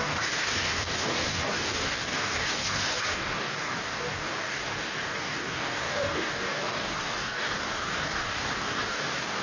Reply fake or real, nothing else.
fake